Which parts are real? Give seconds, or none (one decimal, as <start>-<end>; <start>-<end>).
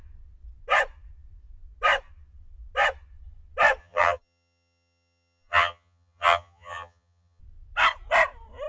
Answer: 0.0-3.8; 7.4-8.7